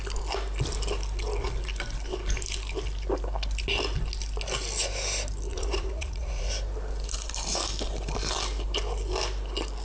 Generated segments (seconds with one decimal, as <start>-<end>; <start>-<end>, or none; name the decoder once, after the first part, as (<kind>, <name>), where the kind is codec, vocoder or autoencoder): 5.5-6.5 (vocoder, Vocos)